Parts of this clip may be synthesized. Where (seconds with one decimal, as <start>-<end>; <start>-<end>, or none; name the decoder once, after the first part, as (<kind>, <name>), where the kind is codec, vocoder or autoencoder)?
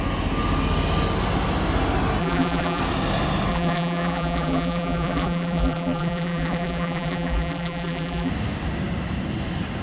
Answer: 2.2-2.8 (vocoder, BigVGAN v2); 3.5-8.3